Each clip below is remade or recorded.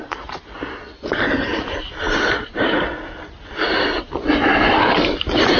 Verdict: recorded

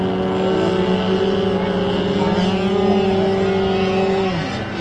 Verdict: recorded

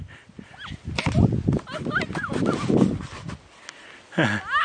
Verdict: recorded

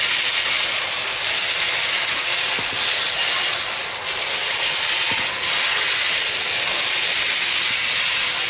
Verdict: recorded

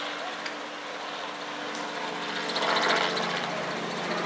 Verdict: recorded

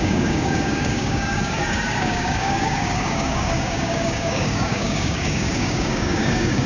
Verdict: remade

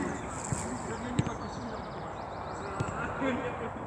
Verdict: recorded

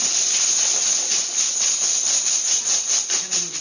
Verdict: recorded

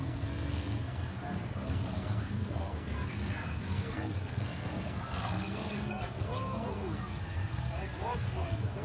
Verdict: remade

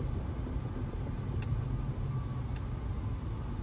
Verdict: recorded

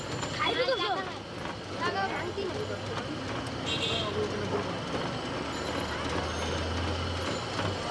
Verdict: recorded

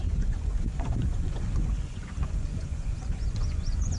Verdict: remade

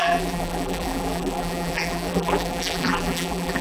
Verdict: remade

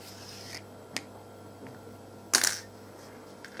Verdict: recorded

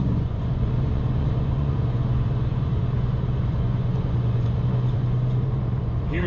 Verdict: remade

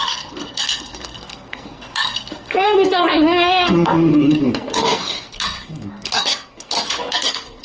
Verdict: remade